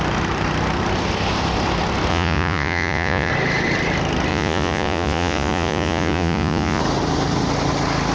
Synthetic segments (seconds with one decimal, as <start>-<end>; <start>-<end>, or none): 2.1-3.3; 4.3-6.8